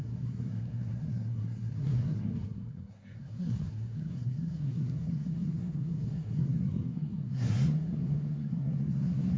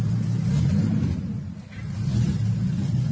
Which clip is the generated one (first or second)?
first